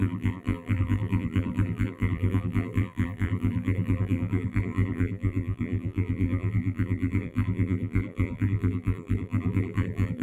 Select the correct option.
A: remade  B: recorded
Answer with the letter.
A